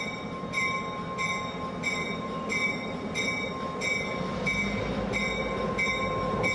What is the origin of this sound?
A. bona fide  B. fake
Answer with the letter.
A